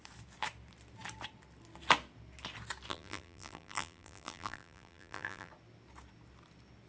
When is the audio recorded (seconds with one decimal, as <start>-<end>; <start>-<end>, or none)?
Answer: 0.0-2.9; 5.5-6.9